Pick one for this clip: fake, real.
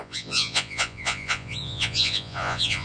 fake